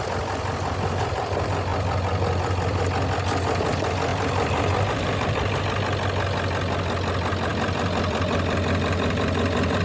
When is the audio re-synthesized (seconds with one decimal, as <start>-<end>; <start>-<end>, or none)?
1.7-2.8; 4.1-5.6; 7.5-9.8